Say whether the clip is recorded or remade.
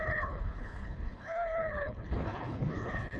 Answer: remade